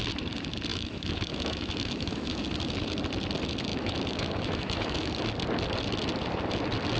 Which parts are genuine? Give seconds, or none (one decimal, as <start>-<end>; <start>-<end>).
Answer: 0.0-0.7; 2.4-3.7; 5.1-7.0